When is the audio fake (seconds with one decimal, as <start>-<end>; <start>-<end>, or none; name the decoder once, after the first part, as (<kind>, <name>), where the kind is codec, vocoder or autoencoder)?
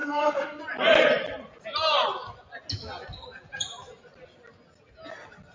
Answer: 0.0-0.6 (autoencoder, DAC-VAE)